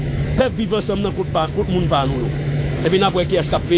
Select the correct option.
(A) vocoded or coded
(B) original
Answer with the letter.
A